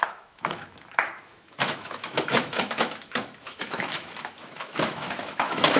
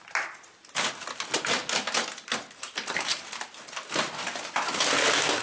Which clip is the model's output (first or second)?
first